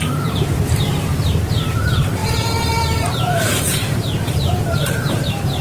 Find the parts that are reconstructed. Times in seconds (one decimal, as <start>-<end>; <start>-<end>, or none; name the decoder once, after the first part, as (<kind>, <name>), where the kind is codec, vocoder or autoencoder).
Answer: 0.0-5.6 (vocoder, BigVGAN v2)